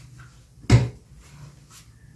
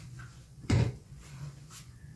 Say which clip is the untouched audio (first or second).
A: first